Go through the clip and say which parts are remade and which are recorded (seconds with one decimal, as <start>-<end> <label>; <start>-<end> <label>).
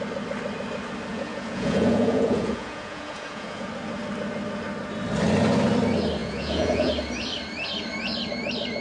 0.0-1.1 recorded; 1.1-3.7 remade; 3.7-6.2 recorded; 6.2-6.9 remade; 6.9-8.8 recorded